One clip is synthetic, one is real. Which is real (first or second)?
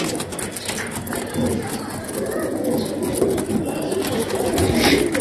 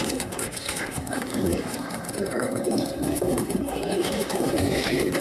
first